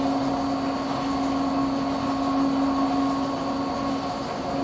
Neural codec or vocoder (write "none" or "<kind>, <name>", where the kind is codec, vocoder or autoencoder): none